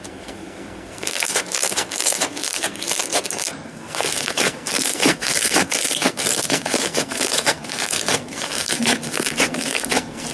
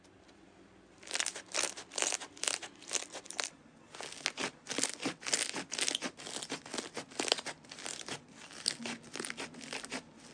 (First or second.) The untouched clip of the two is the second